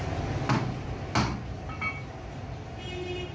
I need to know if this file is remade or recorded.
recorded